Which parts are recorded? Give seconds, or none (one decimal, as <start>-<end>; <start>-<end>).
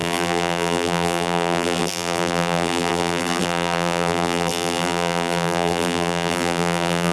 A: none